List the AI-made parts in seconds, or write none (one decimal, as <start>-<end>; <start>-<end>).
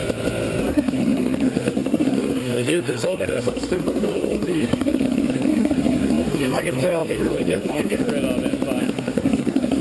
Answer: 0.6-8.1; 8.8-9.8